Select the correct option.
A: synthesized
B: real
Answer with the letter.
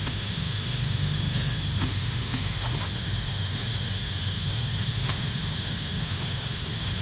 A